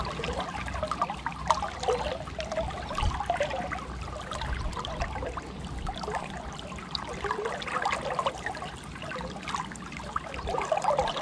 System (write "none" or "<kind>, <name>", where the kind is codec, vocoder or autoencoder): none